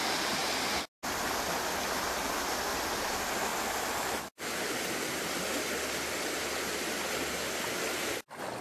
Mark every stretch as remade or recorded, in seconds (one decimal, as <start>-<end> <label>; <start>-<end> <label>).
0.0-8.6 recorded